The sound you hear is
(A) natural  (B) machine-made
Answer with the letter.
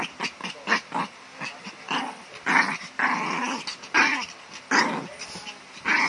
A